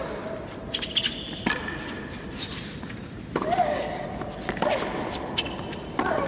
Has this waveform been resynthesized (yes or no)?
no